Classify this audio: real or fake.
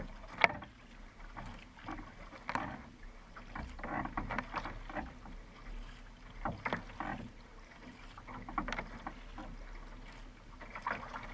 real